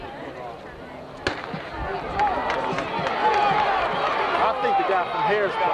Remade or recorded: recorded